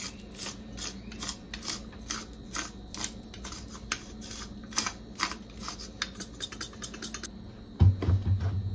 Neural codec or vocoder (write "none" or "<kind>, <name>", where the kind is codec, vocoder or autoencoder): none